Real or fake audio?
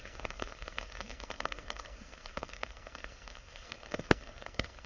fake